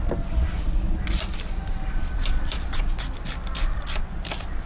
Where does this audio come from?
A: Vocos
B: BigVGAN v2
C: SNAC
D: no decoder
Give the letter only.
D